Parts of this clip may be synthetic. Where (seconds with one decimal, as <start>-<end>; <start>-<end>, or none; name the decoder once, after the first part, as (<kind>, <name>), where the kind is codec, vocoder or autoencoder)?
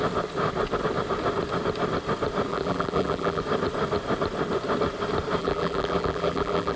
2.5-3.4 (vocoder, BigVGAN v2); 5.4-6.8